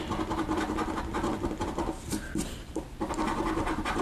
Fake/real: real